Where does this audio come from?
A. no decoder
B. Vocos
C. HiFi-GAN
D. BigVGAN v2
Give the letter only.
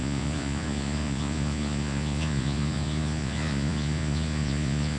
B